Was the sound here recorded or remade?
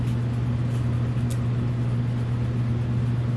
recorded